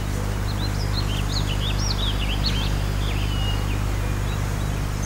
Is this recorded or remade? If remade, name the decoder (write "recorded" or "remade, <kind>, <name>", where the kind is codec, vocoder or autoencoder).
recorded